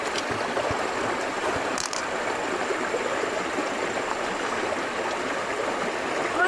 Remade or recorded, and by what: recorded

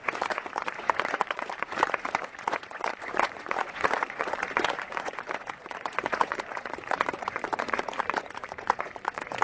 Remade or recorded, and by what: remade, vocoder, Vocos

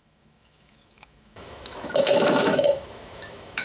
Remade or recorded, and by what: remade, autoencoder, DAC-VAE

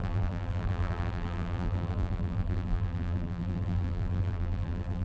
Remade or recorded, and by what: remade, vocoder, BigVGAN v2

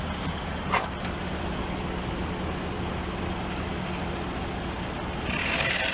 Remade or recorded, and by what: recorded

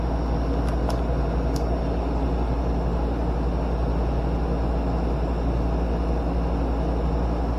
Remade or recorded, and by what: recorded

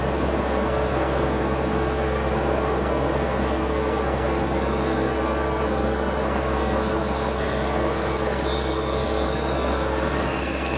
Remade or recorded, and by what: remade, codec, SNAC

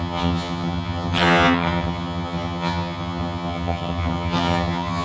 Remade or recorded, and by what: remade, vocoder, HiFi-GAN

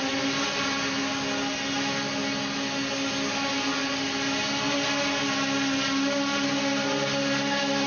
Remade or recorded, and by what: recorded